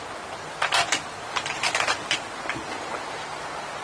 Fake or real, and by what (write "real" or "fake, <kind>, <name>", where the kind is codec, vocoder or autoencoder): real